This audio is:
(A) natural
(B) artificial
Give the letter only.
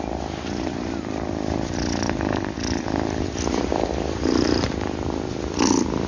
A